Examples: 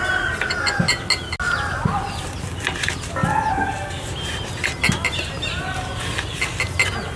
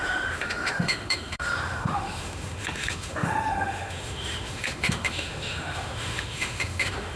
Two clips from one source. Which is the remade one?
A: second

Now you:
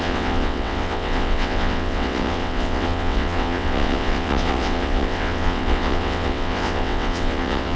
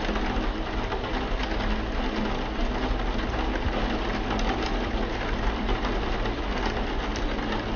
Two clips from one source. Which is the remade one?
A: first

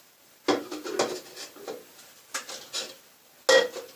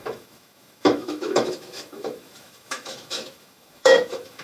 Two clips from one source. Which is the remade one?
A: second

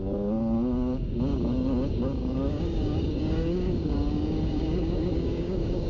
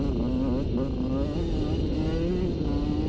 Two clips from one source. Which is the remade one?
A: first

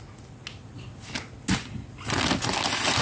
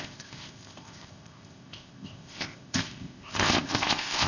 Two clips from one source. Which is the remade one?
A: second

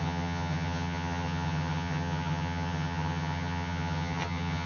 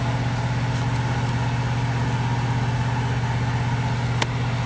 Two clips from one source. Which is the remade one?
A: first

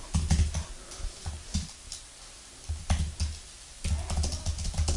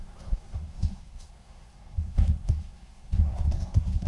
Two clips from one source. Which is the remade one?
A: second